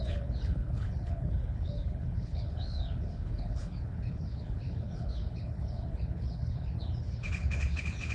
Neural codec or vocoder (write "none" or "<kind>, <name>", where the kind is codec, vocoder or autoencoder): codec, HILCodec